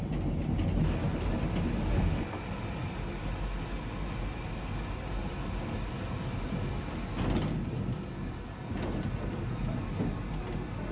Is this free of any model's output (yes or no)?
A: yes